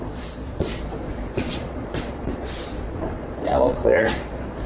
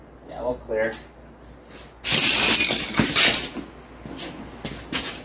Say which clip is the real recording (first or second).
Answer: second